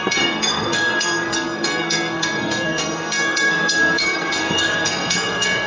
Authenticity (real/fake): fake